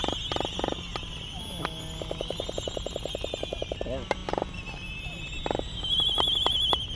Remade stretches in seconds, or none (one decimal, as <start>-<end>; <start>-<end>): none